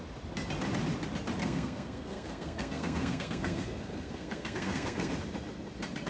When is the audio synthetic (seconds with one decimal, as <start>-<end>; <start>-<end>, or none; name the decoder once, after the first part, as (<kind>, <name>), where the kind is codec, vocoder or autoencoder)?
1.4-5.1 (codec, SNAC)